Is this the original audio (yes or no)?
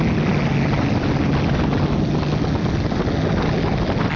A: yes